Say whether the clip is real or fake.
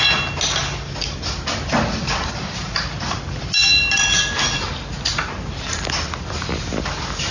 real